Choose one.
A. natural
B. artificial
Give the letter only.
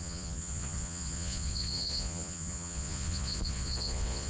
B